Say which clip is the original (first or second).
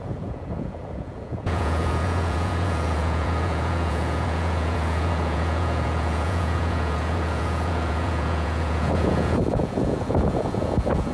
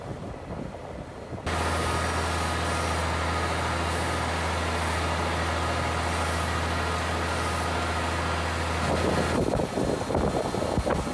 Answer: second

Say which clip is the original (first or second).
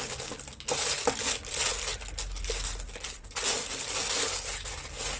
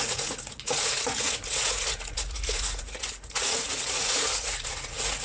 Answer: first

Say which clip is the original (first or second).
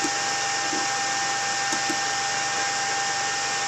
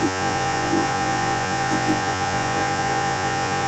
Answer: first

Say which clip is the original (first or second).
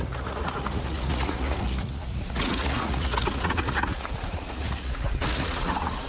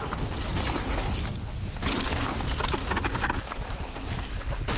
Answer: second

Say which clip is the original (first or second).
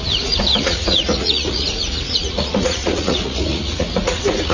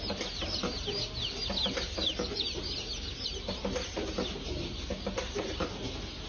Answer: second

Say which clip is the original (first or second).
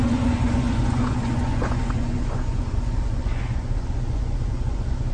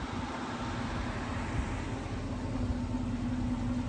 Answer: second